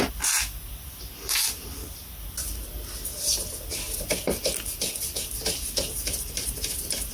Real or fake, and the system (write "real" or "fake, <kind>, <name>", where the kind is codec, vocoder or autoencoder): real